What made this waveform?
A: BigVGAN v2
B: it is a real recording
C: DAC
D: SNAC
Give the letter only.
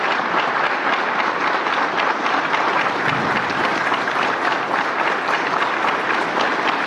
B